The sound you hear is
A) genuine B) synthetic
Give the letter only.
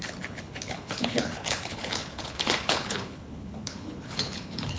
B